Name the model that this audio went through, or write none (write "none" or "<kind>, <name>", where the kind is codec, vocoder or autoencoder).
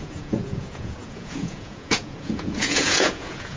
vocoder, Vocos